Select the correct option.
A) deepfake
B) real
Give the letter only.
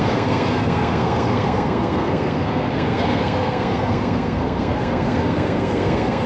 A